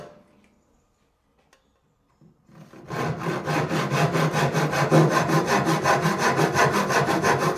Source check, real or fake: real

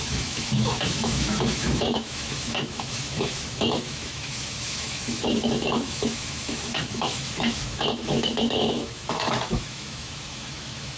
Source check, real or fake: fake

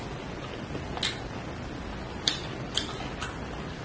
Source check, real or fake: real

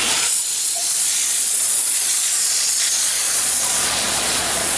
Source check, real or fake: fake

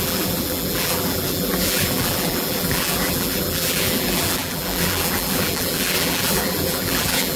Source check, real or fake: fake